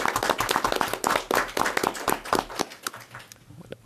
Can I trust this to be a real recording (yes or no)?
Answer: yes